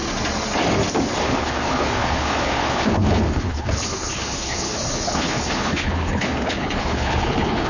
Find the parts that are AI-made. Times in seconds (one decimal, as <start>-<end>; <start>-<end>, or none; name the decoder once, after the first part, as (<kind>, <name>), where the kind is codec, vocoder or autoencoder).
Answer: 1.2-7.7 (codec, HILCodec)